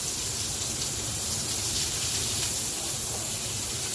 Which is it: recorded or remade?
recorded